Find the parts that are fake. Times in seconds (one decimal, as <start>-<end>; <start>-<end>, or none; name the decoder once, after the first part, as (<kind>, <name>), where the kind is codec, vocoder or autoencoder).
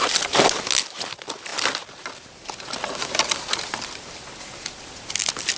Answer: none